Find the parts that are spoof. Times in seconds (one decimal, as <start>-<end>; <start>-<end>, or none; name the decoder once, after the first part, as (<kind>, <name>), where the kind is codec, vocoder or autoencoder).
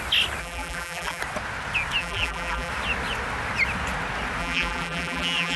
0.4-1.2 (vocoder, BigVGAN v2); 2.0-2.7; 4.4-5.6